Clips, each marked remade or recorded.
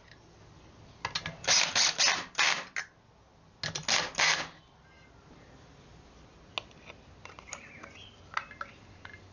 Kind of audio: recorded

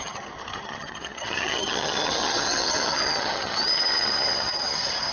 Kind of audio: remade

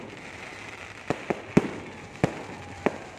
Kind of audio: recorded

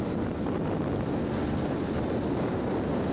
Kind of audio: recorded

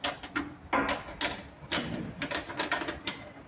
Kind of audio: recorded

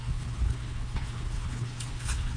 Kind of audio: remade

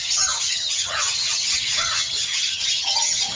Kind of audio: remade